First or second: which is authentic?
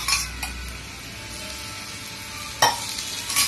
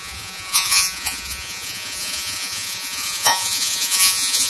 first